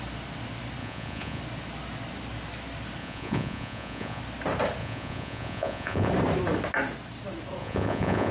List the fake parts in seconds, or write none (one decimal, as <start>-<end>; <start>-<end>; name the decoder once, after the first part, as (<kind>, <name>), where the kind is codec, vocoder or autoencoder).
0.8-1.4 (vocoder, Vocos); 3.0-4.2; 4.8-6.1; 7.6-8.3